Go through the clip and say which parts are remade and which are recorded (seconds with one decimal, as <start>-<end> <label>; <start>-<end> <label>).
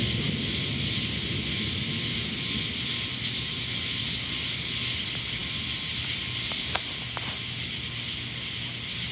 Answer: 0.0-5.4 recorded; 5.4-6.8 remade; 6.8-9.1 recorded